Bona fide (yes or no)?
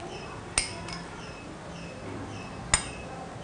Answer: yes